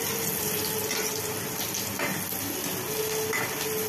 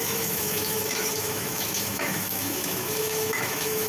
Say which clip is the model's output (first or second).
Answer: second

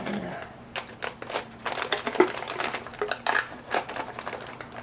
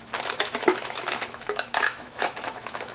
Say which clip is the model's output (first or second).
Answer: second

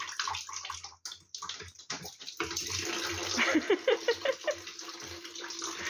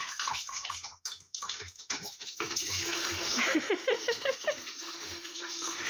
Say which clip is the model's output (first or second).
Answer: second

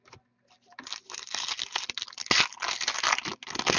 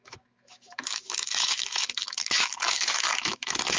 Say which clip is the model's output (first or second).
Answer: second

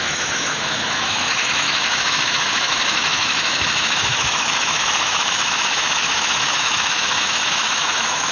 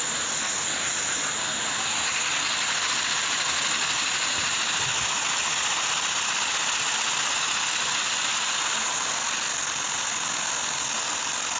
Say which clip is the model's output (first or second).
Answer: first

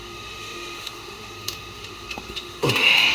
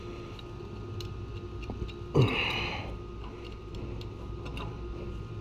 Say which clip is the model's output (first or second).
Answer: first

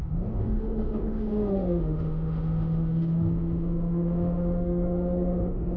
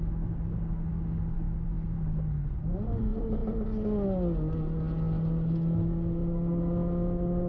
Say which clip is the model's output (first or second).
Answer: first